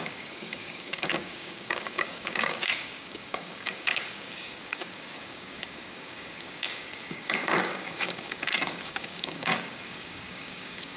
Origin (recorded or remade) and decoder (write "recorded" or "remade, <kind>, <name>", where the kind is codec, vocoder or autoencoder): remade, codec, DAC